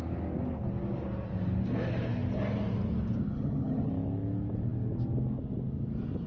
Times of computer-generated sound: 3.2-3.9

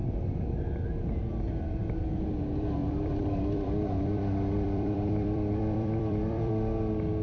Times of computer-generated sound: 2.8-6.5